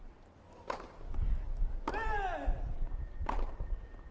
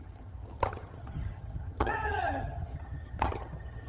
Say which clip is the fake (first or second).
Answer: second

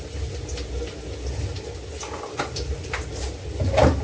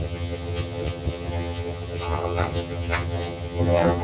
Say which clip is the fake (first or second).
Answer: second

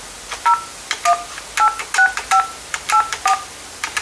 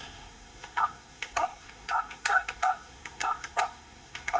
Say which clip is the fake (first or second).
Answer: second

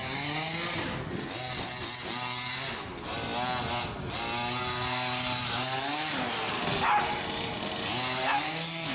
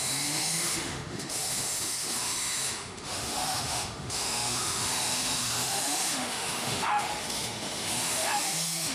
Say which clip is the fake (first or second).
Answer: second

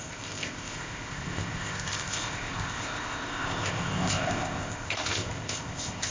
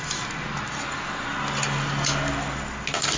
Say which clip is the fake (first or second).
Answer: first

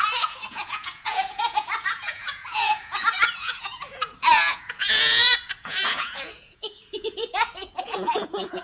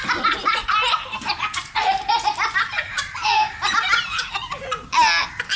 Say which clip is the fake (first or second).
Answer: first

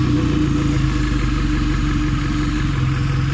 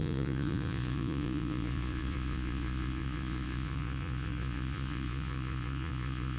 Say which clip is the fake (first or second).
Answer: second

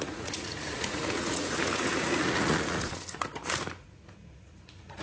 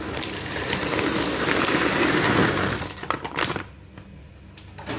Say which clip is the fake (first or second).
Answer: first